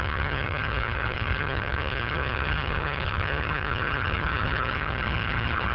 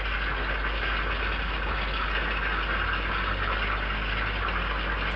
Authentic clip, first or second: second